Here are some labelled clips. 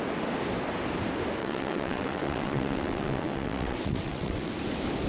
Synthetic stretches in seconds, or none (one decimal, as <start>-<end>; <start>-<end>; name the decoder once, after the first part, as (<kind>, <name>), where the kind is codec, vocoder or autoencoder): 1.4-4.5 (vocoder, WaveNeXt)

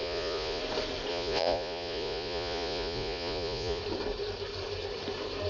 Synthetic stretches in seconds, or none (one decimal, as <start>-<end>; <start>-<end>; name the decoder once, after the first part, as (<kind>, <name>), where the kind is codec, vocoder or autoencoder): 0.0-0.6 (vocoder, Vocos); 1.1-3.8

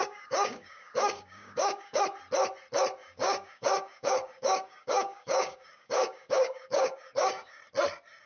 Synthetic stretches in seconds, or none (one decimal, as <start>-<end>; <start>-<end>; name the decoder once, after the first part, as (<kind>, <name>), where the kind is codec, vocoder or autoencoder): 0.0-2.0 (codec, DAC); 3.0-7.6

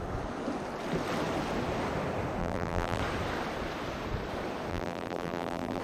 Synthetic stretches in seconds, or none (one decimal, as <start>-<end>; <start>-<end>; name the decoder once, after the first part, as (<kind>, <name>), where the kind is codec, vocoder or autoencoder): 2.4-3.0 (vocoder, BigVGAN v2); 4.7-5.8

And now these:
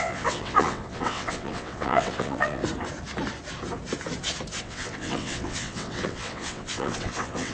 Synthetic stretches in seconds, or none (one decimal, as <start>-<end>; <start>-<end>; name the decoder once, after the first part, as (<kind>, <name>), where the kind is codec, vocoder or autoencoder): 0.0-2.6 (vocoder, WaveNeXt); 4.6-7.5